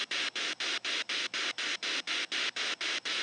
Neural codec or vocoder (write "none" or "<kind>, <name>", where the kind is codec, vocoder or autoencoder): none